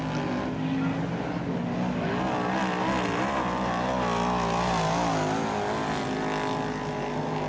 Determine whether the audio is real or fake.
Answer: real